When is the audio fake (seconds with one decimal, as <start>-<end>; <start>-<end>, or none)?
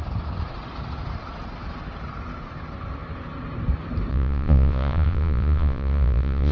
4.1-6.5